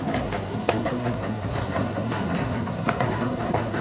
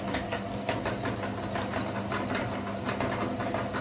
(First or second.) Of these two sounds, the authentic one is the second